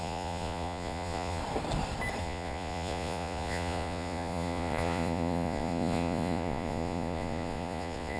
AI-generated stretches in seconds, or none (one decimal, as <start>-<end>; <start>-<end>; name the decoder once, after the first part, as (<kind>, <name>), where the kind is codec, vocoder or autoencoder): 0.0-1.4 (vocoder, Vocos); 2.2-8.2